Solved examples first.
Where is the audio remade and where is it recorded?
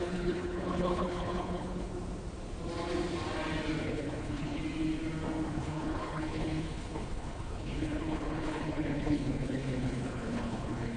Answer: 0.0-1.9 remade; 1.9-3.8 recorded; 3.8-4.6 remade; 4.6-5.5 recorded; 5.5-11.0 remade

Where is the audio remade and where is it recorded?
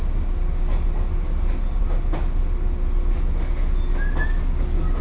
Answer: 0.0-5.0 recorded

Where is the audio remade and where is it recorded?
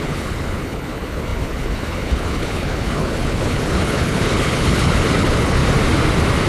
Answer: 0.0-5.6 remade; 5.6-6.5 recorded